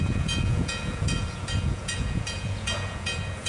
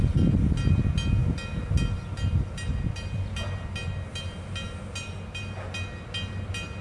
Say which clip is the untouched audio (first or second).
second